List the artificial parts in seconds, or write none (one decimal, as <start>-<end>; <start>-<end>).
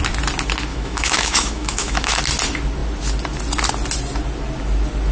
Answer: 0.7-2.2